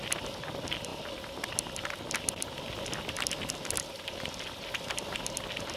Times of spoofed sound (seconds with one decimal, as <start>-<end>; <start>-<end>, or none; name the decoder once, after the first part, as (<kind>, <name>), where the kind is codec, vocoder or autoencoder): none